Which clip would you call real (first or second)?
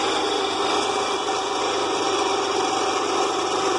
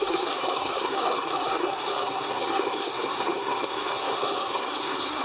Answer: first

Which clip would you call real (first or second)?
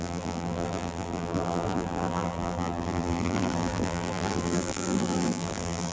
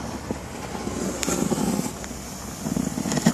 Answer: second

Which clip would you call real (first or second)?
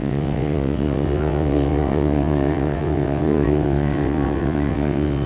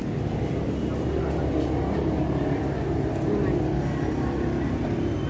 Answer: second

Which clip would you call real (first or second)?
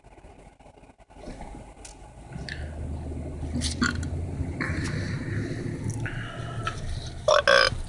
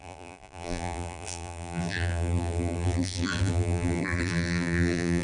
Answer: first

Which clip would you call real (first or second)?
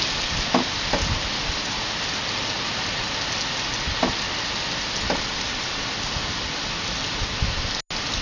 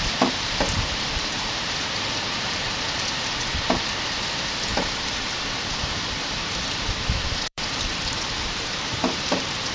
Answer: first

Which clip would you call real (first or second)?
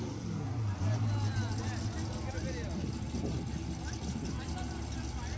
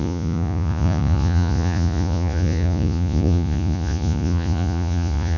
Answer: first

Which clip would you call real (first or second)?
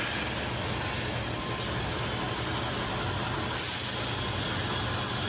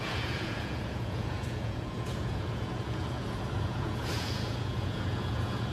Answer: first